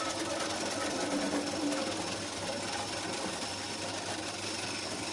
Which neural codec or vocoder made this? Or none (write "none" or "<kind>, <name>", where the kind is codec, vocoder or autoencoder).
none